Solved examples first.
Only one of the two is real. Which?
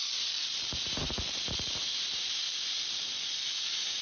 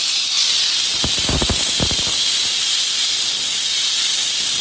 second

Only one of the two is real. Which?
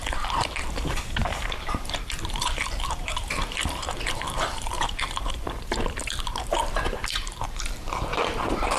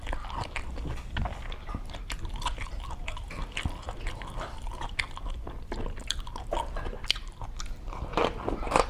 second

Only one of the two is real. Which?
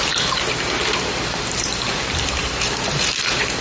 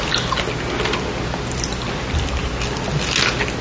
second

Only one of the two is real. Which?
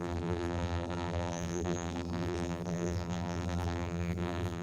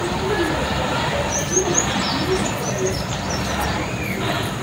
second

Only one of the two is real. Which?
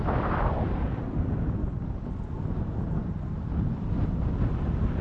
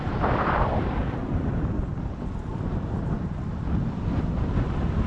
first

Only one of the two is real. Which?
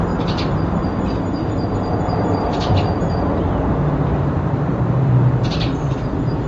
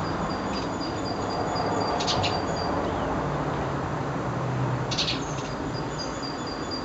second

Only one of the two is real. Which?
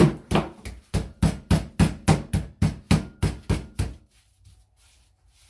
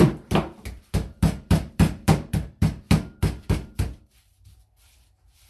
first